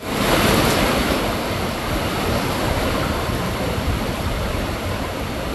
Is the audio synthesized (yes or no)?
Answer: no